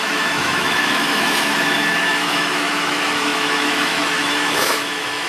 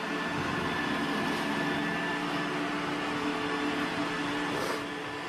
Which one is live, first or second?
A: second